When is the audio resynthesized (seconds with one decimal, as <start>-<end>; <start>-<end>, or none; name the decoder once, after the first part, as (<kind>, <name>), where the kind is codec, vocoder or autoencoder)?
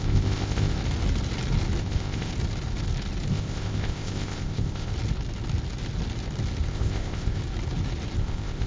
0.0-0.8 (codec, ZipCodec); 1.8-2.3; 3.3-4.9; 6.7-7.4; 8.2-8.7